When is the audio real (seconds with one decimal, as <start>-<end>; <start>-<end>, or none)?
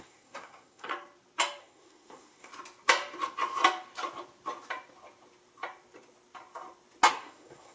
0.9-1.6; 2.5-7.1